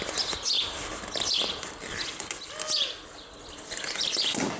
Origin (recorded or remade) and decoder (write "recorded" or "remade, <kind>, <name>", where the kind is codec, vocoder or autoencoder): recorded